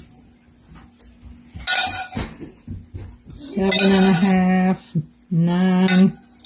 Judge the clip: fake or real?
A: real